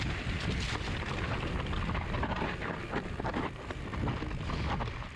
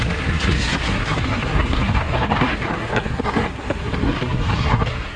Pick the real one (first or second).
first